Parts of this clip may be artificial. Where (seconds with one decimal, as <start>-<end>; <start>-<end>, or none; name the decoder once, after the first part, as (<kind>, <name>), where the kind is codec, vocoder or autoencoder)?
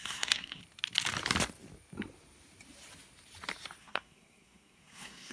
0.0-0.6 (codec, SNAC); 3.8-5.3